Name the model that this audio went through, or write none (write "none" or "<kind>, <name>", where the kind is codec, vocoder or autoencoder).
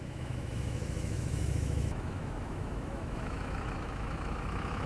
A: autoencoder, DAC-VAE